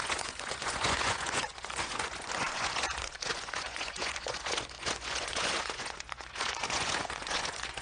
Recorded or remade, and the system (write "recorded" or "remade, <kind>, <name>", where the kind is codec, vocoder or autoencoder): remade, vocoder, Vocos